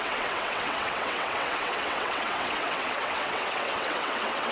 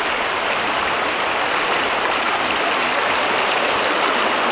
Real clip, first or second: second